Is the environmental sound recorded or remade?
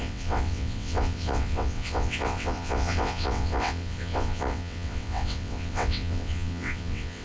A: remade